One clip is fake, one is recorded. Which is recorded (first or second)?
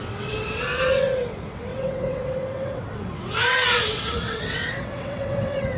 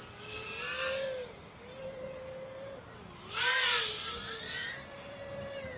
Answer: second